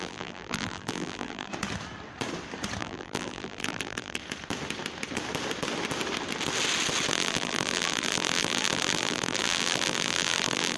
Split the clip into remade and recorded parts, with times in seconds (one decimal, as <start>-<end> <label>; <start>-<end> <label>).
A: 0.0-1.5 remade; 1.5-2.8 recorded; 2.8-4.2 remade; 4.2-7.1 recorded; 7.1-10.8 remade